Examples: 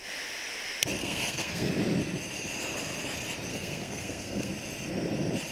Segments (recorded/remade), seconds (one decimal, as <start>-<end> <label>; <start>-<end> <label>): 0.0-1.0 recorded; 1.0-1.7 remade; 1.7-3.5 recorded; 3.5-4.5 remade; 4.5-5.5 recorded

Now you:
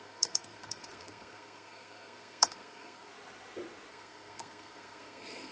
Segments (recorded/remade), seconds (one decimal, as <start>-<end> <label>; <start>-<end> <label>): 0.0-3.1 remade; 3.1-3.9 recorded; 3.9-5.5 remade

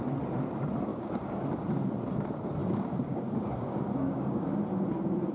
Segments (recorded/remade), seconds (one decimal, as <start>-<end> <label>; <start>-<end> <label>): 0.0-0.9 recorded; 0.9-1.9 remade; 1.9-2.6 recorded; 2.6-4.6 remade; 4.6-5.3 recorded